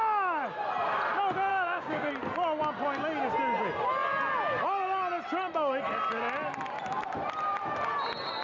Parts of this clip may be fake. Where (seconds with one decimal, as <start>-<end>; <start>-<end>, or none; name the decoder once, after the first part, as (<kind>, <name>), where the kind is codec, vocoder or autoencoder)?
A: 1.5-2.1 (codec, DAC)